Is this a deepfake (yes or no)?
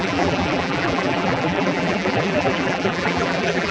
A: yes